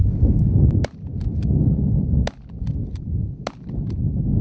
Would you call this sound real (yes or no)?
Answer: yes